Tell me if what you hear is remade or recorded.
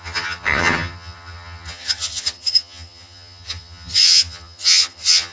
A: remade